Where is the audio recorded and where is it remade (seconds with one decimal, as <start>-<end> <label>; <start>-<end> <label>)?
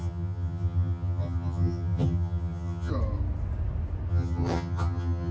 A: 0.0-2.9 remade; 2.9-4.1 recorded; 4.1-5.3 remade